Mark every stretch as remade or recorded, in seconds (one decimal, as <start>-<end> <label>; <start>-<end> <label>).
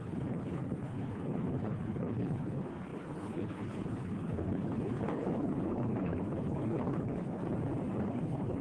0.0-7.4 remade; 7.4-8.0 recorded; 8.0-8.6 remade